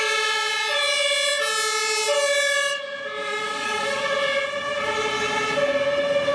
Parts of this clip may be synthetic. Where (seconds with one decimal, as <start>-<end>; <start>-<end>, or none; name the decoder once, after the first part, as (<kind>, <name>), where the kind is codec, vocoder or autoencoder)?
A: 3.2-4.1 (codec, DAC)